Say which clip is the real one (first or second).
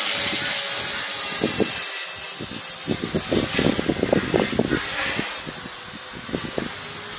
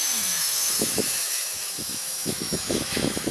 first